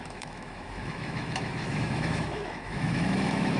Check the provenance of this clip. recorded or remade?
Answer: remade